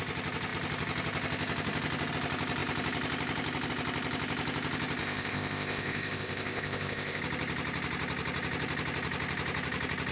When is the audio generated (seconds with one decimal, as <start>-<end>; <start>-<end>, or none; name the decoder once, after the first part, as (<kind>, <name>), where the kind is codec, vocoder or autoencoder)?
5.0-7.2 (codec, ZipCodec)